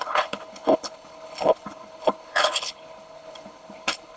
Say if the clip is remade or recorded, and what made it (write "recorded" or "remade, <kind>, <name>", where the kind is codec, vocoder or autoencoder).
remade, codec, HILCodec